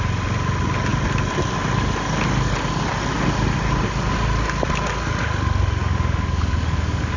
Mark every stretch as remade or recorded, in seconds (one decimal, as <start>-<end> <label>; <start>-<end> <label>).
0.0-5.8 recorded; 5.8-7.2 remade